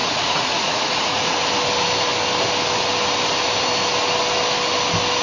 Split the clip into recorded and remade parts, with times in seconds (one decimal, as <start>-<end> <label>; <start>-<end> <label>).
0.0-1.3 remade; 1.3-5.2 recorded